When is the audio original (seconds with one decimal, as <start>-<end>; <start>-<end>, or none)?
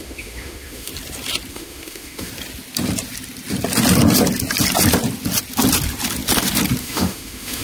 0.9-1.5; 2.3-6.8